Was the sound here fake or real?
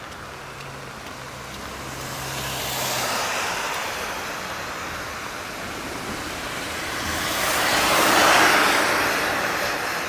real